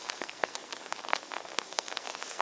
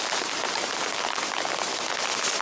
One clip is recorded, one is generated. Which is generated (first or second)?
first